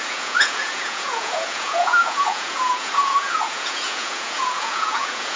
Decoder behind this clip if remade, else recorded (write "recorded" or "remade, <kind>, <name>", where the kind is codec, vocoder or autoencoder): remade, vocoder, Vocos